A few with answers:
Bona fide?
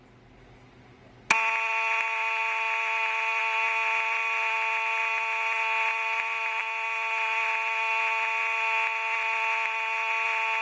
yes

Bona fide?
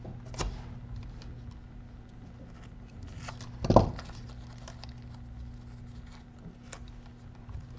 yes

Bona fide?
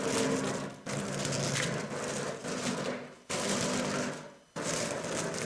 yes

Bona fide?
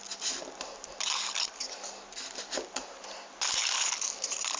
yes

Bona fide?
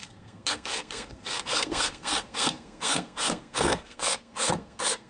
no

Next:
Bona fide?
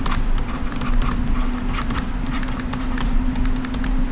yes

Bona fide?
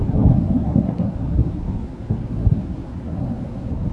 no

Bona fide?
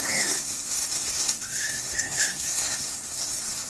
no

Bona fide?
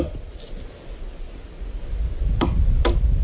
yes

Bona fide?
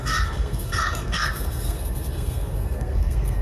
no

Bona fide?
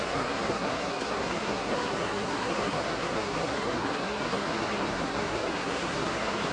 no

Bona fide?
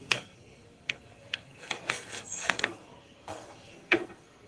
no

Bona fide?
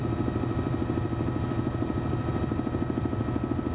yes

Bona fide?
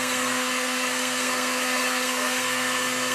no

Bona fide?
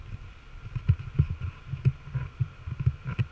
yes